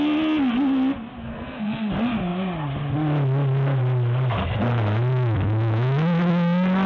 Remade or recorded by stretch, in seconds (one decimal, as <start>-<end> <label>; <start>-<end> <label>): 0.0-1.3 recorded; 1.3-1.9 remade; 1.9-6.9 recorded

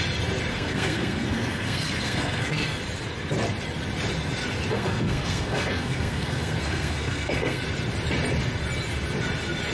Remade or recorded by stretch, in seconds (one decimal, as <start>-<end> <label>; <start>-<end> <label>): 0.0-0.5 recorded; 0.5-2.8 remade; 2.8-4.7 recorded; 4.7-7.6 remade; 7.6-9.7 recorded

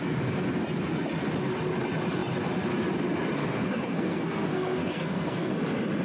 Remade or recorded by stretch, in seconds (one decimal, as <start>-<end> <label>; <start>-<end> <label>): 0.0-3.4 recorded; 3.4-5.5 remade; 5.5-6.0 recorded

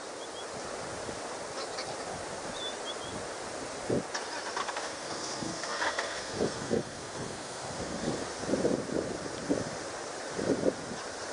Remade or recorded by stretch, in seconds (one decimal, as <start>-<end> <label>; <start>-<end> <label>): 0.0-4.6 recorded; 4.6-8.1 remade; 8.1-11.3 recorded

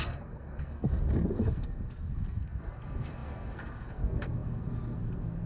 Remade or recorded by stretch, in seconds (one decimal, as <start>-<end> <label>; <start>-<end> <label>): 0.0-5.5 remade

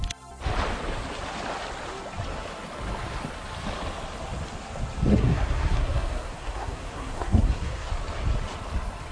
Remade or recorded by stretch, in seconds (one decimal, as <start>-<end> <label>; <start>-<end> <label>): 0.0-5.1 recorded; 5.1-7.9 remade; 7.9-9.1 recorded

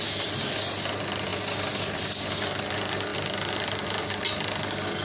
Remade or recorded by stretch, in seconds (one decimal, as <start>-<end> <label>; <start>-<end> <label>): 0.0-5.0 recorded